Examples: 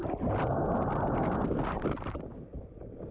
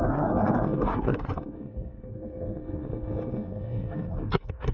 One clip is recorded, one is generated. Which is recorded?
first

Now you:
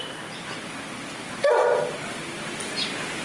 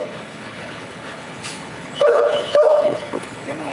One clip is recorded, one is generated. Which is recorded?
first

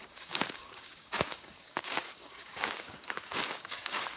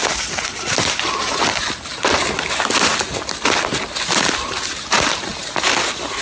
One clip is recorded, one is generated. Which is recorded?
second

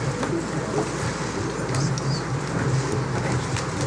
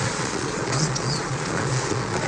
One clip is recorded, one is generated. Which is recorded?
first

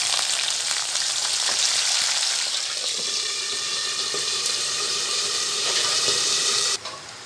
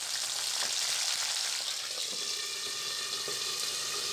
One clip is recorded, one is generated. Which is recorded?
second